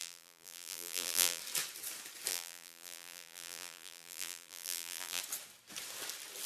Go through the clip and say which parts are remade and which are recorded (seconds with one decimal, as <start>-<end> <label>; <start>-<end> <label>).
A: 0.0-1.4 remade; 1.4-2.3 recorded; 2.3-5.2 remade; 5.2-6.5 recorded